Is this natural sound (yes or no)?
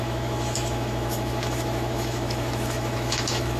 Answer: no